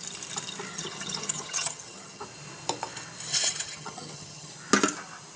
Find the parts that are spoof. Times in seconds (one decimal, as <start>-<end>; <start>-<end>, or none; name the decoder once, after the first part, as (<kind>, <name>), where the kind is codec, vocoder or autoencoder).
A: 0.7-2.2 (vocoder, HiFi-GAN); 3.3-4.5